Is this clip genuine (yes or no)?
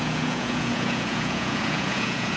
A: no